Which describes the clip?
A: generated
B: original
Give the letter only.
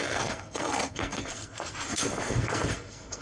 A